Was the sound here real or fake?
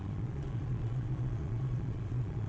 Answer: fake